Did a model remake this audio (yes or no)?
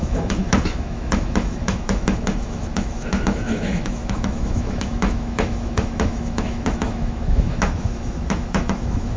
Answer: yes